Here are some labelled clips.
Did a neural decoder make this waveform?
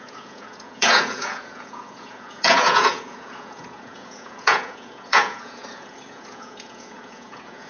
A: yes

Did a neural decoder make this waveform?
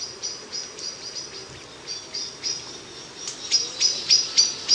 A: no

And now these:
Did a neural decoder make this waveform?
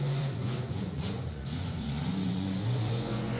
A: yes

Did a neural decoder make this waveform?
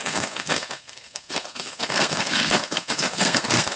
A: yes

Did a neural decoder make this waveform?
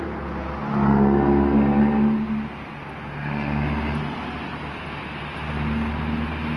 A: no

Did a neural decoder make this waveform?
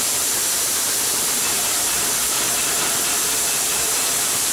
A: yes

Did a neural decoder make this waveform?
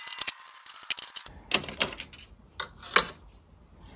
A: no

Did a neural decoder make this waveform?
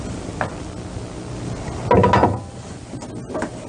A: no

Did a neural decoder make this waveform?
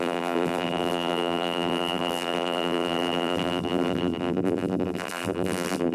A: yes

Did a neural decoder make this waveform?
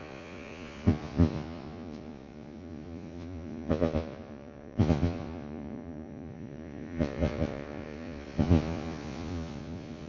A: yes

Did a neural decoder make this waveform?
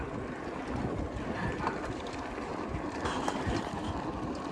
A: no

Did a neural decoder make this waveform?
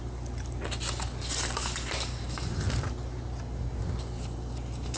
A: no